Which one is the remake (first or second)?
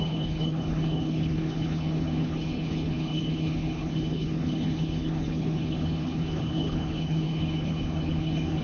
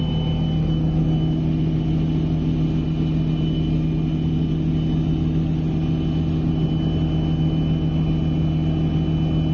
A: first